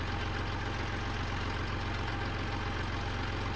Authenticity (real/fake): real